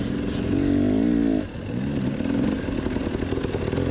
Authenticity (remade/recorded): recorded